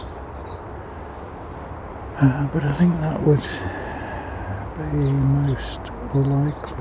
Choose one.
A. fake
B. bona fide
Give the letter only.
B